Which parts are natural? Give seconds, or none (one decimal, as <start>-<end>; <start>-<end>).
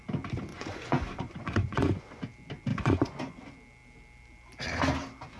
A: 0.0-0.5; 2.2-2.7; 3.4-5.4